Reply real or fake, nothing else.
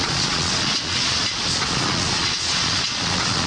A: fake